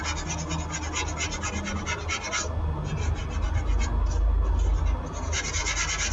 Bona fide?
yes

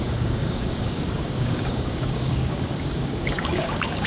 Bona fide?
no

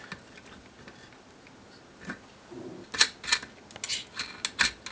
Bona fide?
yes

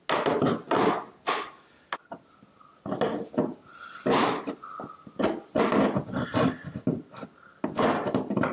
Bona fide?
yes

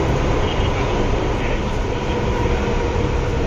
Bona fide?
yes